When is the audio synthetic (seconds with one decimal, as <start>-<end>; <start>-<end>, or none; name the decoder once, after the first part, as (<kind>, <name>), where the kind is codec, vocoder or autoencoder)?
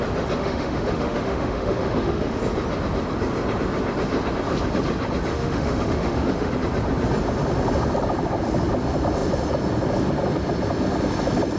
0.4-2.4 (autoencoder, DAC-VAE); 5.3-6.5